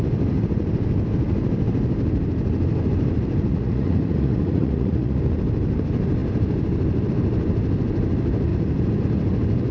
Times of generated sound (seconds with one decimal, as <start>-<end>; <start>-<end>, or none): 3.5-5.2